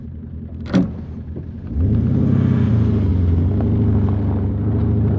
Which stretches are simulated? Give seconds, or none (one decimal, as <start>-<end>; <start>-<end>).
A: none